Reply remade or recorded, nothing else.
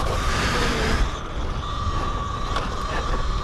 recorded